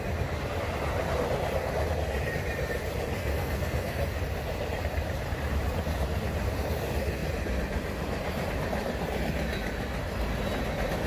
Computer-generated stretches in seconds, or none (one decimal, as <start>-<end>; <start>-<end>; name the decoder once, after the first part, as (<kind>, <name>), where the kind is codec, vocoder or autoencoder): 3.2-4.2 (codec, SNAC)